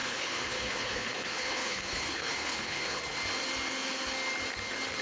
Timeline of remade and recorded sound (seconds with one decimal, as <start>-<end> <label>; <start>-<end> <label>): 0.0-3.0 remade; 3.0-5.0 recorded